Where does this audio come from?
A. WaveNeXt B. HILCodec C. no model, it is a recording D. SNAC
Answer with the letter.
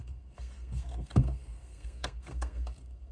D